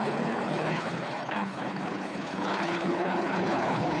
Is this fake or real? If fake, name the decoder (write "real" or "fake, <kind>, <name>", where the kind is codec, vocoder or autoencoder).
fake, codec, HILCodec